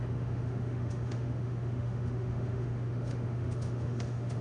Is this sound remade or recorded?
remade